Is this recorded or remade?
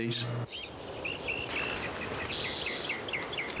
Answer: recorded